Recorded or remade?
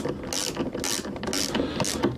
recorded